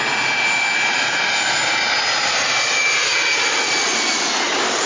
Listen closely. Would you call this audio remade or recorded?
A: recorded